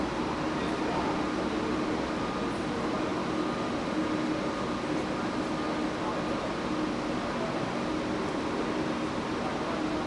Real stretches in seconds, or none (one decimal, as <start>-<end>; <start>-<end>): 0.0-10.1